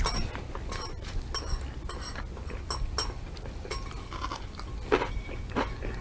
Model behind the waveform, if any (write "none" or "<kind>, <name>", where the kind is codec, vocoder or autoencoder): none